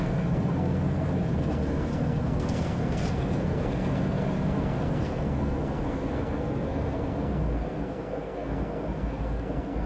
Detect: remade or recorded remade